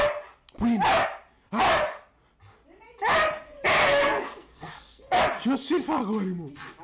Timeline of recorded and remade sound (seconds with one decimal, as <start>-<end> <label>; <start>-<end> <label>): 0.0-3.8 recorded; 3.8-5.2 remade; 5.2-6.8 recorded